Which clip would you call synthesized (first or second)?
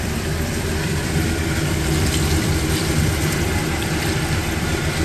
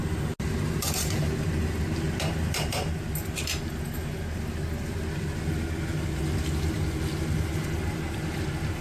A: first